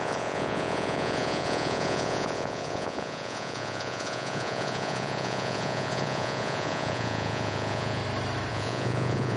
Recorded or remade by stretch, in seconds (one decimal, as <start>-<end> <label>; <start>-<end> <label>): 0.0-8.0 remade; 8.0-8.5 recorded; 8.5-9.4 remade